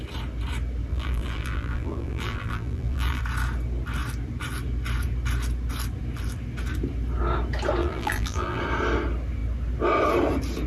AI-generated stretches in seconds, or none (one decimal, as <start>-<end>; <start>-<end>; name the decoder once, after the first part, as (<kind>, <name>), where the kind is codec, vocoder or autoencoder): 0.9-3.2 (vocoder, BigVGAN v2); 7.8-8.6